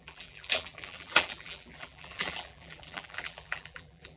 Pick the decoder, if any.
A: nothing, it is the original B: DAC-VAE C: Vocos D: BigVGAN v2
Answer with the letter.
D